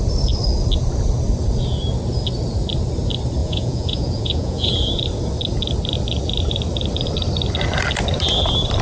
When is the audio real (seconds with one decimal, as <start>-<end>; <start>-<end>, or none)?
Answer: 0.0-3.4; 4.7-8.8